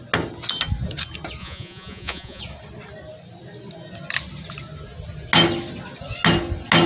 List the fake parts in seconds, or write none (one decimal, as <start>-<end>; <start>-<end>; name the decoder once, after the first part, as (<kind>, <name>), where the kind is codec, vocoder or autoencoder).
1.4-2.4 (vocoder, Vocos)